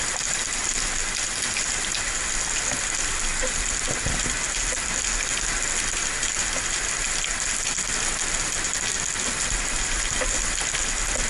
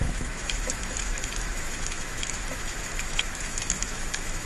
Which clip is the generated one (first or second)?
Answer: second